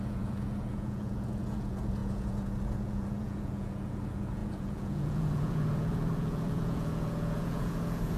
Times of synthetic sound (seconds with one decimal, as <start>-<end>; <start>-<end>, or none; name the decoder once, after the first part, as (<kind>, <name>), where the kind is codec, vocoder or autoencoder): 0.0-8.2 (vocoder, Vocos)